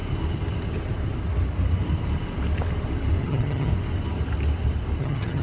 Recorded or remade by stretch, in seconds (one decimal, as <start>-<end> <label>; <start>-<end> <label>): 0.0-3.2 recorded; 3.2-3.7 remade; 3.7-5.0 recorded; 5.0-5.4 remade